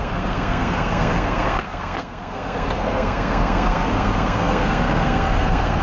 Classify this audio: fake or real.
fake